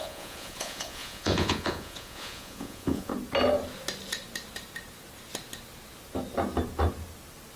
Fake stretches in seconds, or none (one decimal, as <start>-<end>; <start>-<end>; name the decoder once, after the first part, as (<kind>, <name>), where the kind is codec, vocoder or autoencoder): 0.0-3.1 (vocoder, Vocos)